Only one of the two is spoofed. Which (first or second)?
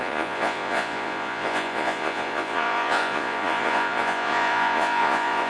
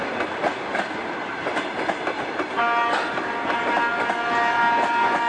first